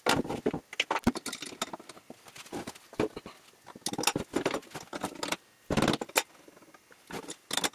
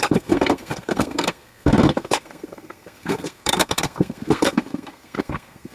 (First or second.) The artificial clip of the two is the second